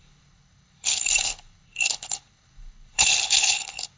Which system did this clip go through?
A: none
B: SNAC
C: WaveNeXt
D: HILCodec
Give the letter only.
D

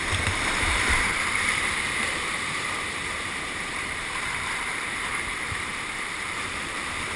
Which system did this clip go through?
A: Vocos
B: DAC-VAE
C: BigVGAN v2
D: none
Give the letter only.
C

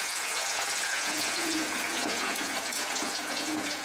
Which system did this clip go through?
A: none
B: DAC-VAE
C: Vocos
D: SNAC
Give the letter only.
C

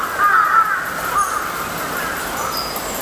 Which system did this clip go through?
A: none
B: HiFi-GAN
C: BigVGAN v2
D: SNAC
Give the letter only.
A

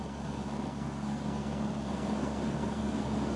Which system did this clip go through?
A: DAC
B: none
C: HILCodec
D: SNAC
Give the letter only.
D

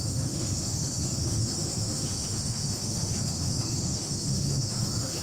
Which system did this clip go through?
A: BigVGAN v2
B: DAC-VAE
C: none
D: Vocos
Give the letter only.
B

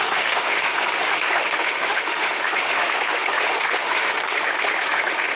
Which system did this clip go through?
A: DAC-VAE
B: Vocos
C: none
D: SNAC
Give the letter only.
A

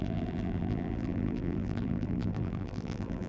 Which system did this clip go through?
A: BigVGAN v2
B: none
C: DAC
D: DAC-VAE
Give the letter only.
A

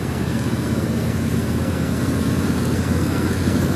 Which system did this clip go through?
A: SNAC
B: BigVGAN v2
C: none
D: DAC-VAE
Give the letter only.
A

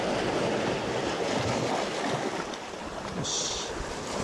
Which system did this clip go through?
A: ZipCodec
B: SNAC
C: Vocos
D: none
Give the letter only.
D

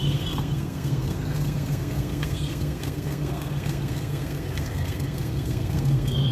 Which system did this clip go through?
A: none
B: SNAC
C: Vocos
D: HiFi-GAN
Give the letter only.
B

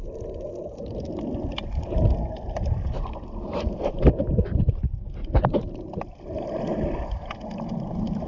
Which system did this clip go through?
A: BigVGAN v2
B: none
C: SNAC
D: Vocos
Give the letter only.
B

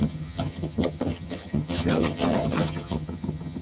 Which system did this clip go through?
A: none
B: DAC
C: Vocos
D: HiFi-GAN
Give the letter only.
D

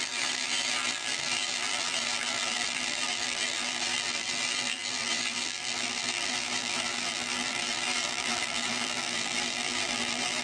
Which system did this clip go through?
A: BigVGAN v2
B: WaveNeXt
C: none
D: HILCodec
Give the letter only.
A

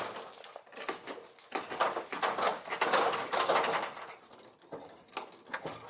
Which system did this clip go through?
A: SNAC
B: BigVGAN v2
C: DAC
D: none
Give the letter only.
D